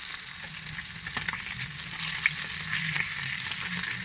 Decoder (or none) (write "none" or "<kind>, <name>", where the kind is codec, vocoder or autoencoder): none